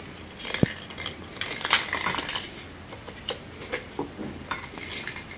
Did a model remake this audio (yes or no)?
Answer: no